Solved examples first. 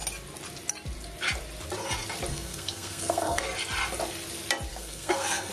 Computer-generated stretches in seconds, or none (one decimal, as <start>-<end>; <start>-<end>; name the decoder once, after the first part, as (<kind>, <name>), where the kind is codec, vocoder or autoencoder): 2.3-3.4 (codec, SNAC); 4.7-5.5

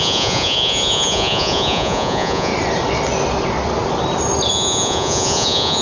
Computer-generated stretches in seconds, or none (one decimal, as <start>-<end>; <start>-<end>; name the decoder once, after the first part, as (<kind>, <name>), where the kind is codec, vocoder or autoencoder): 0.0-2.5 (vocoder, Vocos); 4.5-5.8

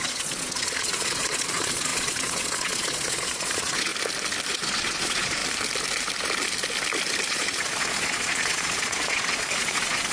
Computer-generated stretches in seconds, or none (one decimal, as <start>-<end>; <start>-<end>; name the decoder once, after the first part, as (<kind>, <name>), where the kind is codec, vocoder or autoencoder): 0.0-3.9 (vocoder, Vocos); 4.5-5.4; 7.3-10.1

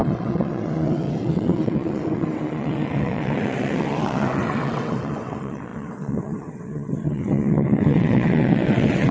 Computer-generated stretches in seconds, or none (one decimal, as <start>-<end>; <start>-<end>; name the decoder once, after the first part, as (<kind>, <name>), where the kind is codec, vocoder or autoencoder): 0.0-9.1 (vocoder, WaveNeXt)

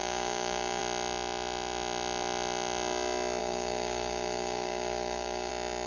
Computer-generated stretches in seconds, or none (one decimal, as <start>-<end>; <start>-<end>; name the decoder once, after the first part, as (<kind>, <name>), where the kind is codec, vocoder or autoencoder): 0.0-0.8 (codec, DAC); 3.4-5.5

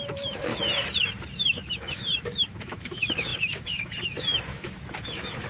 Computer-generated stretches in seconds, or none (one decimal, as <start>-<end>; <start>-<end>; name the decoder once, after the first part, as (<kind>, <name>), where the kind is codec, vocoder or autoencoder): 0.0-0.5 (autoencoder, DAC-VAE); 1.4-5.5

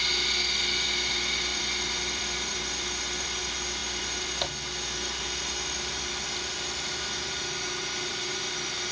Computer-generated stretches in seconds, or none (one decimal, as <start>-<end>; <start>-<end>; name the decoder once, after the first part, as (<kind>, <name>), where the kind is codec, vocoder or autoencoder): 1.5-3.4 (vocoder, BigVGAN v2); 3.8-4.4; 8.1-8.9

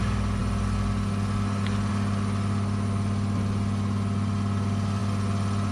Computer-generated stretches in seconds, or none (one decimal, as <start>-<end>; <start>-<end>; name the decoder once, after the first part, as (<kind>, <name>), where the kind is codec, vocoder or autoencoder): none